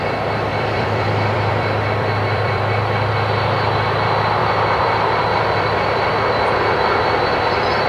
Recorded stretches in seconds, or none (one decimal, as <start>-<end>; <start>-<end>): 0.0-0.5; 3.1-4.4; 6.1-7.9